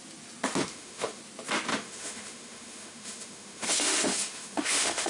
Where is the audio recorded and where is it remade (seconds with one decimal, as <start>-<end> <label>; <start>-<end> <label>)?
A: 0.0-0.7 recorded; 0.7-1.2 remade; 1.2-1.7 recorded; 1.7-5.1 remade